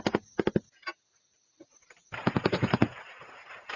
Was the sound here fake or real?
real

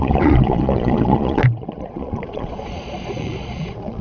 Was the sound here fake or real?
fake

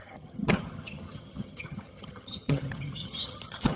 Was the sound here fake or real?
fake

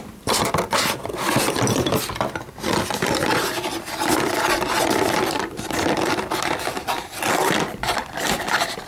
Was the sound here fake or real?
real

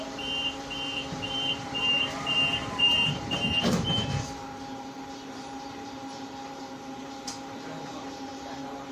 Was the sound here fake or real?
fake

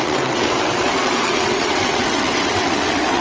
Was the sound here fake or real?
fake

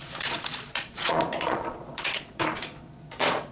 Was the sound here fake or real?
fake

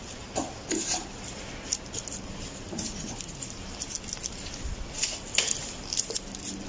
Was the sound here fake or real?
real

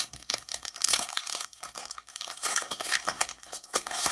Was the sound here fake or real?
fake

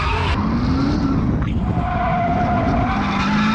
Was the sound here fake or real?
real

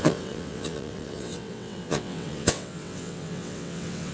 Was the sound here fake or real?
fake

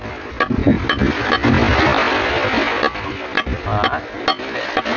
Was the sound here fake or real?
real